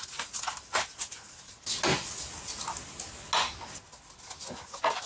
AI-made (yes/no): no